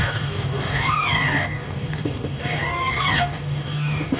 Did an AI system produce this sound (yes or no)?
yes